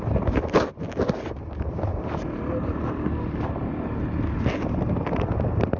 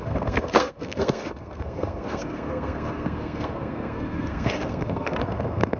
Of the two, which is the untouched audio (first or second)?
first